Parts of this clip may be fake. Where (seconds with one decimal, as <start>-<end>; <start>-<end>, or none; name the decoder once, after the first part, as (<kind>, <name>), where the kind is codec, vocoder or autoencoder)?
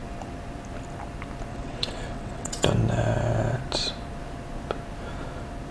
1.5-2.7 (vocoder, WaveNeXt)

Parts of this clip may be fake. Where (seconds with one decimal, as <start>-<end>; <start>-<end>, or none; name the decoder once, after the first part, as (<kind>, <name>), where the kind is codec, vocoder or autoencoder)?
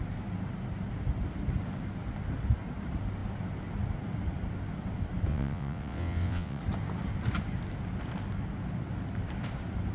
5.3-6.6 (vocoder, WaveNeXt)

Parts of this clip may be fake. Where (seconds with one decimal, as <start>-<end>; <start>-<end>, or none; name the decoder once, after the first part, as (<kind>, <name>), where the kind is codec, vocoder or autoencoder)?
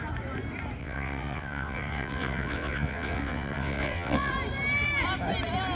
0.8-4.3 (vocoder, WaveNeXt)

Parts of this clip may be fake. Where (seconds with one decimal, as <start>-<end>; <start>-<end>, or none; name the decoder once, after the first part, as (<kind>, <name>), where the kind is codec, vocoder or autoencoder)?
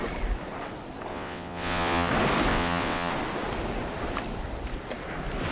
1.1-2.1 (vocoder, WaveNeXt); 2.5-3.1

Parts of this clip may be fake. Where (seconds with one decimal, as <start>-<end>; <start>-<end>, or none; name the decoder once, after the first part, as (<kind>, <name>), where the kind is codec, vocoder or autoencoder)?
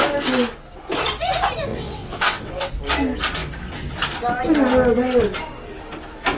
1.7-2.7 (vocoder, WaveNeXt)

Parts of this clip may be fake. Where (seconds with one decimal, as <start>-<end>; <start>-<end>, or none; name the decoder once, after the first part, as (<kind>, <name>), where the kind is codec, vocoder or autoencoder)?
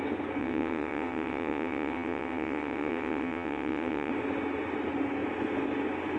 0.4-4.1 (vocoder, WaveNeXt)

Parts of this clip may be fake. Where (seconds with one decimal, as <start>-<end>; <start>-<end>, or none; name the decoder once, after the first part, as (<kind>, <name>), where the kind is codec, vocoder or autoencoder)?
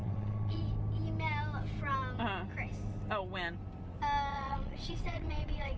0.0-0.6 (vocoder, WaveNeXt); 4.3-5.8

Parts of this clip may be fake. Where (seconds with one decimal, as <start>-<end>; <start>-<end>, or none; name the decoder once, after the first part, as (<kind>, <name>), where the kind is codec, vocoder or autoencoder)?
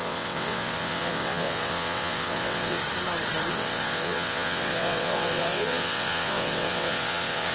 0.0-2.8 (vocoder, WaveNeXt); 3.5-7.5